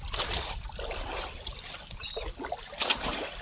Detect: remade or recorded recorded